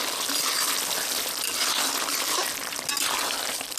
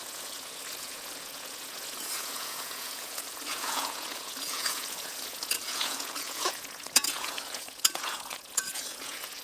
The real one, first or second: first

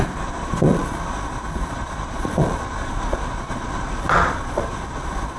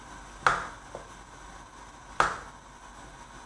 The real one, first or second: second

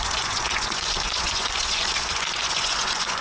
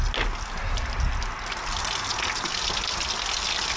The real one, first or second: second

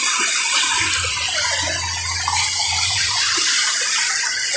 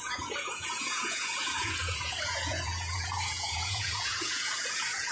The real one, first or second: first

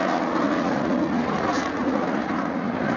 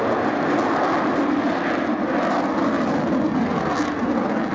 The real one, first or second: second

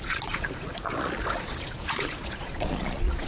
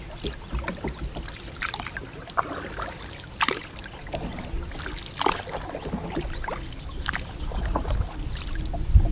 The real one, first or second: second